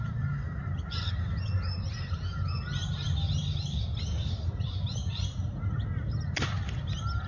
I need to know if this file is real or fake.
real